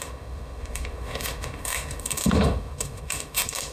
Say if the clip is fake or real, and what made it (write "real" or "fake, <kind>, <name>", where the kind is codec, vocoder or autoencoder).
fake, autoencoder, DAC-VAE